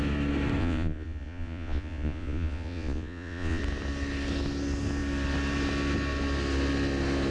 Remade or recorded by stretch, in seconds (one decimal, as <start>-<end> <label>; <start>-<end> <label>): 0.0-0.6 recorded; 0.6-3.6 remade; 3.6-7.3 recorded